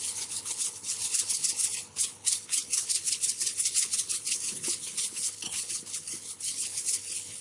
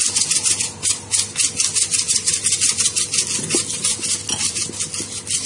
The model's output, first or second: first